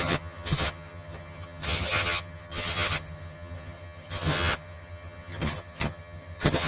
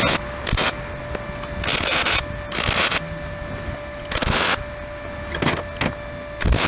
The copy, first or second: first